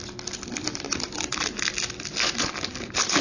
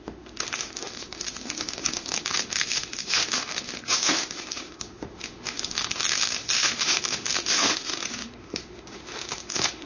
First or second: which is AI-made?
second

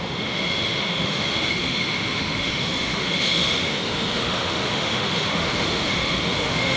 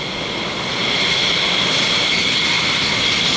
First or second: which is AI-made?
first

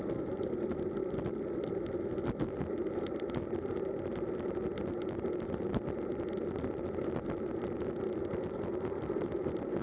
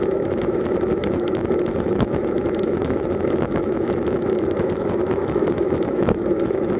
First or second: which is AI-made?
second